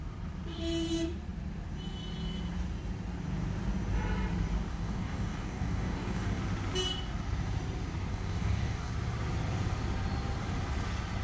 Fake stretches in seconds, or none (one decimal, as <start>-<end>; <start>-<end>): 4.7-6.4; 8.1-8.9